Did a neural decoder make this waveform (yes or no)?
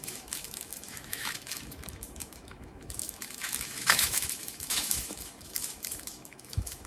yes